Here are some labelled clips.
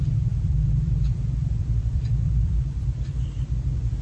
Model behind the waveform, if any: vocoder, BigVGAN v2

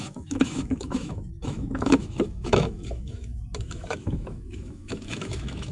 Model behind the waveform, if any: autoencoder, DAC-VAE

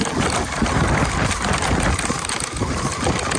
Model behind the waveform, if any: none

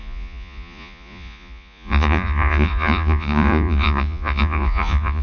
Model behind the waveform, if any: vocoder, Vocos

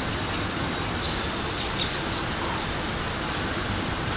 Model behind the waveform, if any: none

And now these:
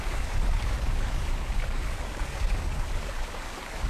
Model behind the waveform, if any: codec, DAC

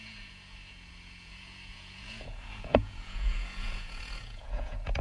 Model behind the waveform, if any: vocoder, Vocos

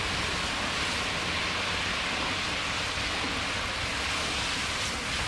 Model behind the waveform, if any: none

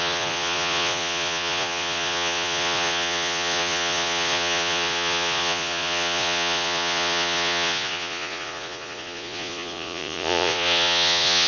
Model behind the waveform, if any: vocoder, Vocos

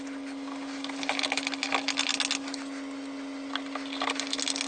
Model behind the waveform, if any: none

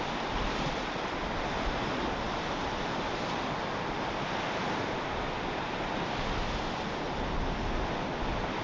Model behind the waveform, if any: none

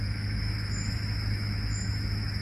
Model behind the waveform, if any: autoencoder, DAC-VAE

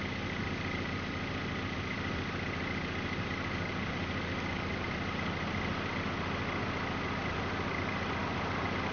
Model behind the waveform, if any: none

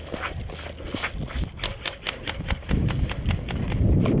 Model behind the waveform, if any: none